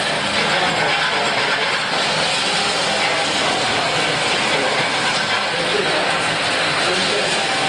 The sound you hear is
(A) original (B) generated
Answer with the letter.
A